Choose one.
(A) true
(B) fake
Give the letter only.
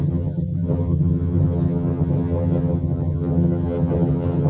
B